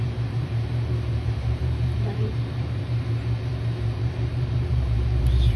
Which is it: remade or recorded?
remade